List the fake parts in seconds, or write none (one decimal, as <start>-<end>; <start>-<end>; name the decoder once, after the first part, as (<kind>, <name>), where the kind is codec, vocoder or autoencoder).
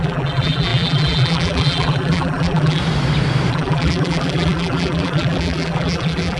0.0-2.8 (vocoder, BigVGAN v2); 3.5-6.4